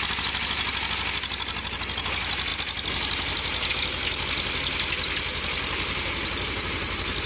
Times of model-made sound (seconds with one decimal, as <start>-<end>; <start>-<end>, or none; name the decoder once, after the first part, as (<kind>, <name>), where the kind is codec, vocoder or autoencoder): none